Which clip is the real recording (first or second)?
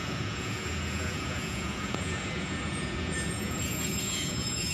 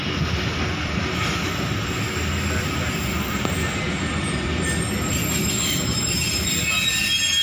second